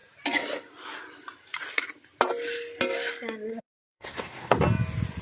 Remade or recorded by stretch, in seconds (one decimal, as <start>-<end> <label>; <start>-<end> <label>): 0.0-3.5 recorded; 3.5-4.6 remade; 4.6-5.2 recorded